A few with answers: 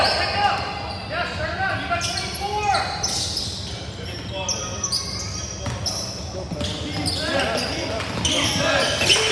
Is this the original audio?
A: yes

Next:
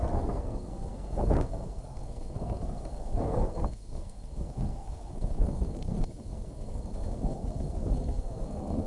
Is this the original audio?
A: no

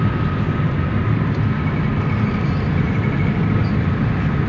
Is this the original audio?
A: yes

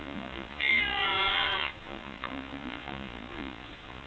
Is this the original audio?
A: no